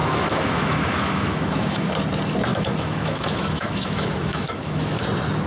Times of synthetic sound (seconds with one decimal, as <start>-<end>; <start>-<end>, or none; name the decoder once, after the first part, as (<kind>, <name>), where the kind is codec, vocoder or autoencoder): 0.0-1.9 (autoencoder, DAC-VAE); 2.5-5.0